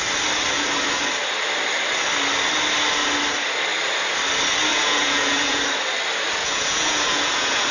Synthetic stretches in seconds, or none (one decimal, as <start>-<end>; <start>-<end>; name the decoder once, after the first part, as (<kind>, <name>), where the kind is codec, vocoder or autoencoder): 4.7-5.6 (vocoder, Vocos); 6.4-7.7